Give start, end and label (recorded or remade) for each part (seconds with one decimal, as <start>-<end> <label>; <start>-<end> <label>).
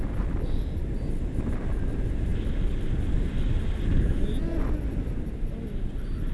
0.0-6.3 recorded